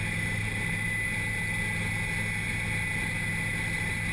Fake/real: real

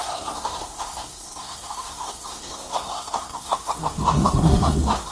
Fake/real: fake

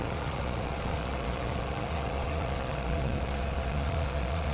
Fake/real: fake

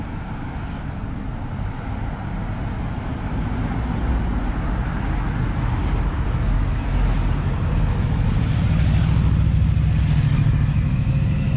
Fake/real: real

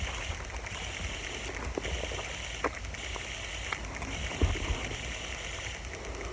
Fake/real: real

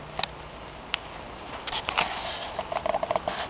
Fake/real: real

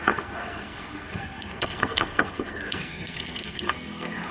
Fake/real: fake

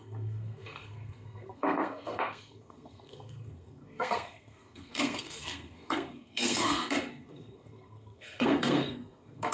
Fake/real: fake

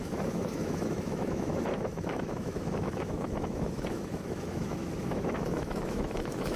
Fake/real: fake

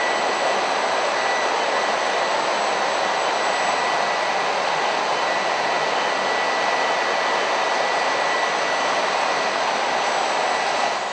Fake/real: real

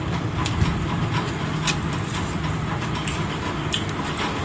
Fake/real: real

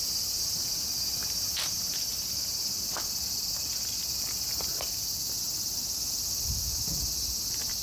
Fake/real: real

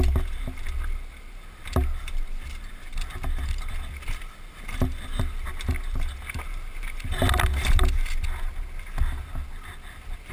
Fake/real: real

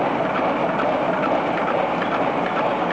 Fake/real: real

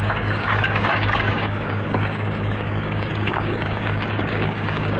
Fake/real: fake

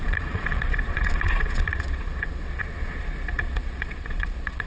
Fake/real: fake